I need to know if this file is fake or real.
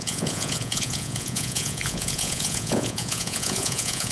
fake